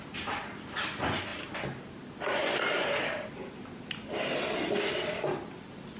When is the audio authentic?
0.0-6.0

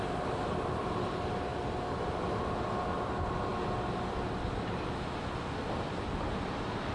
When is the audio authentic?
0.0-6.9

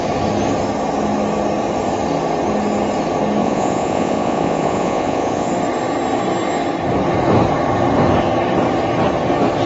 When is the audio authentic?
0.0-3.4; 5.5-9.7

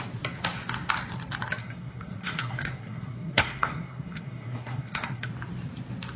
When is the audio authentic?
0.0-1.6; 5.3-6.2